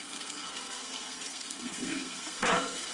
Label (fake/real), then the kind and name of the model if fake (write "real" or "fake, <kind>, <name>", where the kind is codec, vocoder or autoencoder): fake, codec, SNAC